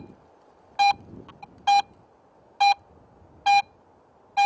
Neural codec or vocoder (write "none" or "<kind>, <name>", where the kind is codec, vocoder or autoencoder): none